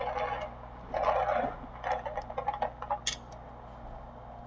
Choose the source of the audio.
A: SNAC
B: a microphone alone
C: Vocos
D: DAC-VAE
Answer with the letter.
B